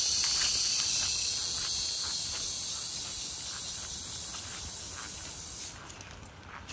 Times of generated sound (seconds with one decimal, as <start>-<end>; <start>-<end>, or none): 0.0-0.5; 1.6-4.3; 5.9-6.7